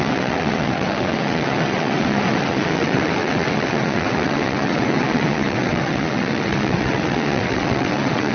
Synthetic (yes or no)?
yes